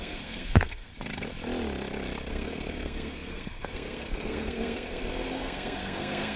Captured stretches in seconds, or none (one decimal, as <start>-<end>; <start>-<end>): 0.9-2.3